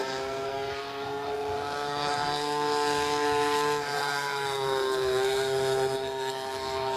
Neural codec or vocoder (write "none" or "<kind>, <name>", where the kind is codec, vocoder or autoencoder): codec, SNAC